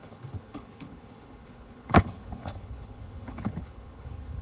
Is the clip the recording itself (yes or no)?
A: no